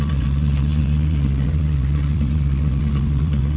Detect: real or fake fake